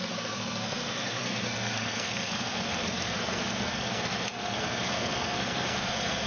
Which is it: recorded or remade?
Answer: remade